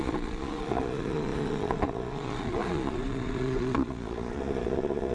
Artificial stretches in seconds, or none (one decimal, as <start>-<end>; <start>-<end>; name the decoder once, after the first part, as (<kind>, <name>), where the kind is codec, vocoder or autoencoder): 0.0-5.1 (vocoder, Vocos)